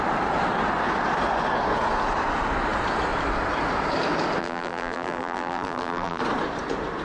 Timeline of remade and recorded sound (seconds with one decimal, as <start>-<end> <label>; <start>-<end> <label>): 0.0-4.4 recorded; 4.4-6.2 remade; 6.2-7.0 recorded